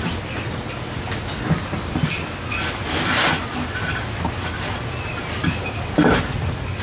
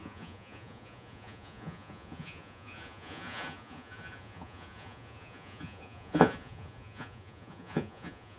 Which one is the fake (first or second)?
second